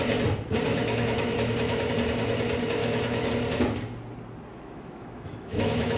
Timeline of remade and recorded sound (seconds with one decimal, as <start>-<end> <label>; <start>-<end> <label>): 0.0-0.7 recorded; 0.7-1.9 remade; 1.9-2.8 recorded; 2.8-3.3 remade; 3.3-4.5 recorded; 4.5-6.0 remade